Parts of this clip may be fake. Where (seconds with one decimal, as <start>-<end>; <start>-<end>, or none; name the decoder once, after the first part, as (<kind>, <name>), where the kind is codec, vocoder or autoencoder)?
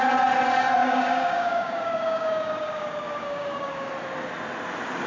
0.8-3.9 (codec, DAC)